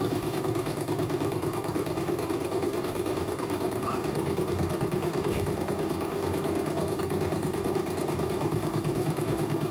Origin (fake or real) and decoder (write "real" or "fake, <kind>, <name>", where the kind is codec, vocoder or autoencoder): fake, codec, DAC